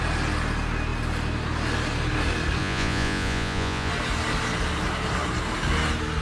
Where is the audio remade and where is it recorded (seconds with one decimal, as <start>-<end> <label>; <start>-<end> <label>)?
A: 0.0-2.6 recorded; 2.6-3.9 remade; 3.9-6.2 recorded